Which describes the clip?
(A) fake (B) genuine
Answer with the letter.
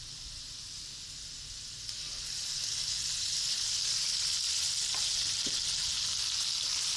B